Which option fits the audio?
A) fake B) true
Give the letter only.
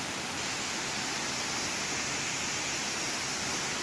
B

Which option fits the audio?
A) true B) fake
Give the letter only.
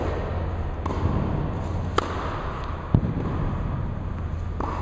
A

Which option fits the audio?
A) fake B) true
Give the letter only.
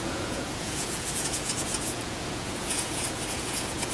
A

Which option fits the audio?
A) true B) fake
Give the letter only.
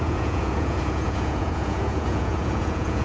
B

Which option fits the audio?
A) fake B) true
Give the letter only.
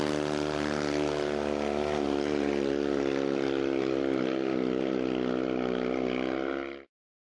B